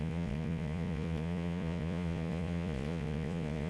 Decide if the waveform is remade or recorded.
remade